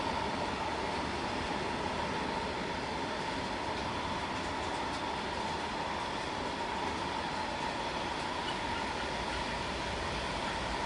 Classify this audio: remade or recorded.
recorded